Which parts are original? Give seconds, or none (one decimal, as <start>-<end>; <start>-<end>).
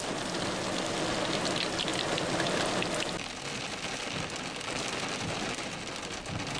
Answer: 0.0-6.6